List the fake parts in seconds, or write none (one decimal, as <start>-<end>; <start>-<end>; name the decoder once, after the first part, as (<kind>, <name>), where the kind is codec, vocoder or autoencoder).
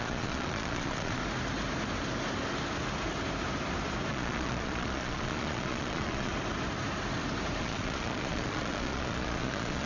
0.0-1.2 (vocoder, Vocos); 4.1-6.3; 7.6-9.9